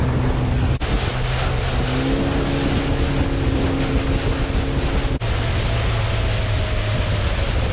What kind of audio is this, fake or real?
real